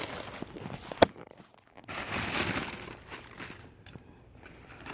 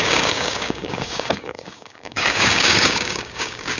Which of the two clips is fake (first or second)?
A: second